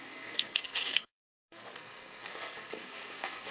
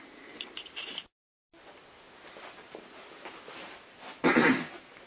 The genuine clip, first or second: second